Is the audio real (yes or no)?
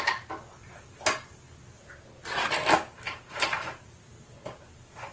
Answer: yes